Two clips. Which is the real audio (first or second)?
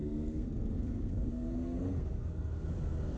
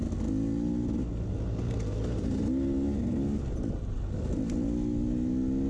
second